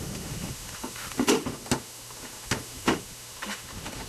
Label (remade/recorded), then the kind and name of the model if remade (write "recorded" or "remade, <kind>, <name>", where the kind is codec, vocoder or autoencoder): remade, autoencoder, DAC-VAE